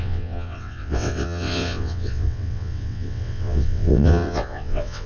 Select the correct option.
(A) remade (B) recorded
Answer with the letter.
A